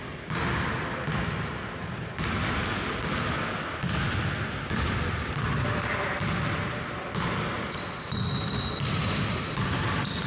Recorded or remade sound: recorded